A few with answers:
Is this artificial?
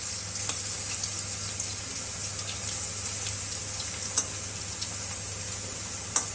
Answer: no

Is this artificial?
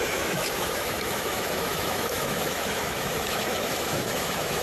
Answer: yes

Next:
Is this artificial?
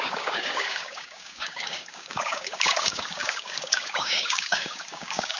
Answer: yes